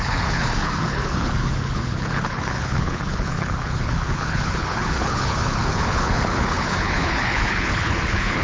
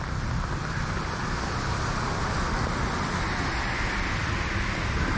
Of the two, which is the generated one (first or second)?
first